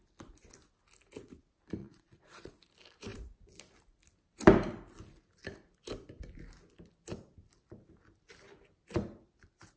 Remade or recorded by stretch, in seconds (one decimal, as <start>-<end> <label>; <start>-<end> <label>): 0.0-1.8 recorded; 1.8-2.5 remade; 2.5-9.8 recorded